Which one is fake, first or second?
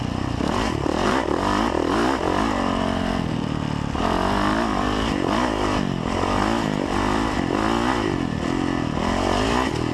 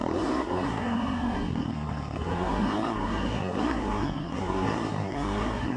second